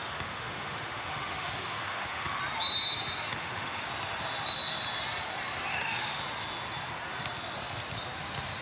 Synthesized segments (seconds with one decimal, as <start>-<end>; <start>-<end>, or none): 0.0-2.4; 3.3-3.9; 5.7-6.2